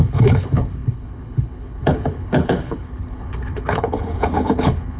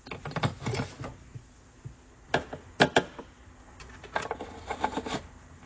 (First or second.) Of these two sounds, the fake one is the first